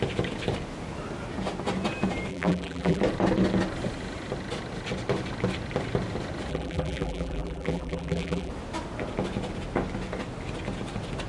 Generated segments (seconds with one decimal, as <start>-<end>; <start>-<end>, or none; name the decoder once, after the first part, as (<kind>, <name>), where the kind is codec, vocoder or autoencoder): 2.3-3.0 (vocoder, BigVGAN v2); 6.5-8.5